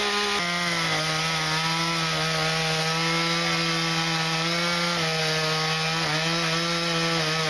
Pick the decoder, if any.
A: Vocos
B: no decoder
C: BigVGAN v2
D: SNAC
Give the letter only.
B